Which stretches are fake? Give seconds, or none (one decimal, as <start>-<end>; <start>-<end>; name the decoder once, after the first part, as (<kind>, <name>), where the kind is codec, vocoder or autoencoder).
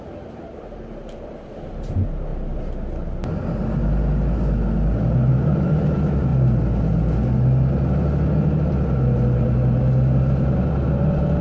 0.0-2.3 (vocoder, BigVGAN v2); 5.3-6.3